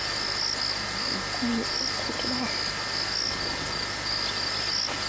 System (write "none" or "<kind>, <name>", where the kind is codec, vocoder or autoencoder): none